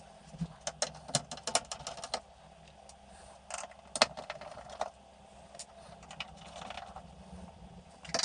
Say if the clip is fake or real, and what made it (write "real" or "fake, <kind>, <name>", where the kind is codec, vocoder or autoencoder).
real